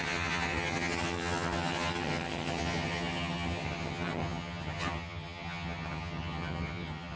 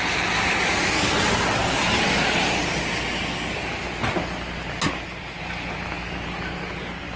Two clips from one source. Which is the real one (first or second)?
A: second